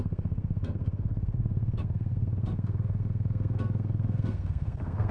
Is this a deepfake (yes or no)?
yes